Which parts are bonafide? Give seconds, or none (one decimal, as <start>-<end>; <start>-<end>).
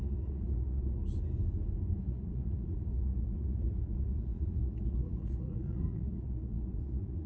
1.0-2.0